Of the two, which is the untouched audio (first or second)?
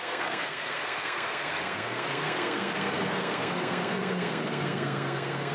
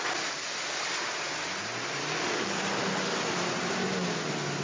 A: second